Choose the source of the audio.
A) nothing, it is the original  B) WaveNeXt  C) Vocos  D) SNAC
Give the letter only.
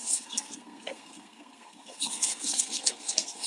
D